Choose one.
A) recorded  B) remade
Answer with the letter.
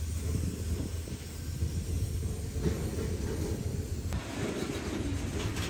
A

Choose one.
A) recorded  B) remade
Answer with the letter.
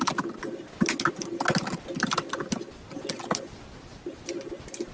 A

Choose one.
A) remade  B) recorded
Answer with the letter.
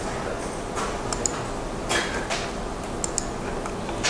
B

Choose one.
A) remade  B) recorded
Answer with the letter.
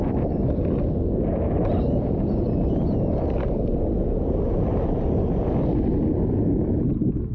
B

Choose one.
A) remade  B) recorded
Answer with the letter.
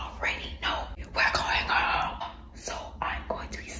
B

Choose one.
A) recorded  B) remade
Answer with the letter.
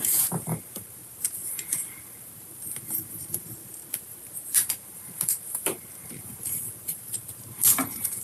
B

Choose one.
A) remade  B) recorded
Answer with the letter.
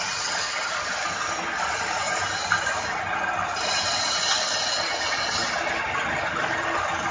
B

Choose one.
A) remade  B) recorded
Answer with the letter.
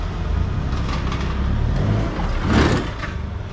B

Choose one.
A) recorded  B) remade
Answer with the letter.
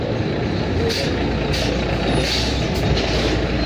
A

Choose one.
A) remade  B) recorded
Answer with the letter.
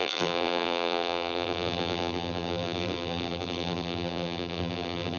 A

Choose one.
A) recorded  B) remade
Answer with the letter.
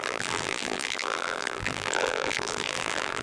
B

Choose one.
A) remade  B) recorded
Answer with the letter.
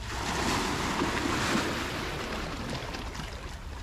B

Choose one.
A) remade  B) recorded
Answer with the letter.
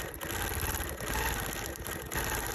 B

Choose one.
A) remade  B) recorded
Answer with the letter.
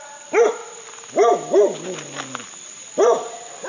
B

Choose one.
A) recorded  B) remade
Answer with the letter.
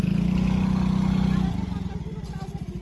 A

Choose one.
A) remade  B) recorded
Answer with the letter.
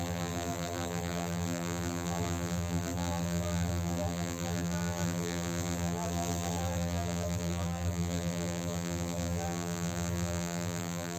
A